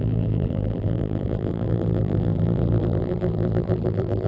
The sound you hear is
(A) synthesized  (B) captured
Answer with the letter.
A